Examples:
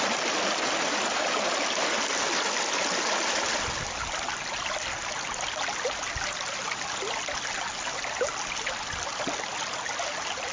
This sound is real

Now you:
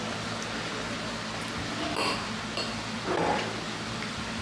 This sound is real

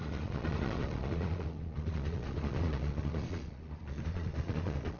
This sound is fake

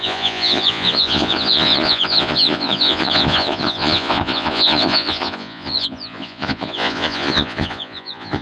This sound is fake